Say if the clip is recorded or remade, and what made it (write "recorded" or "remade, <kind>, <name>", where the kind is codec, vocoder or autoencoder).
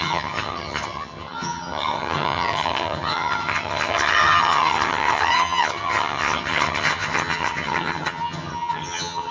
remade, vocoder, HiFi-GAN